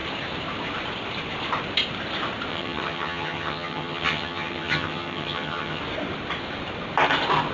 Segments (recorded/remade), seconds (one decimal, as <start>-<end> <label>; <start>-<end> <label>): 0.0-2.5 recorded; 2.5-5.8 remade; 5.8-7.5 recorded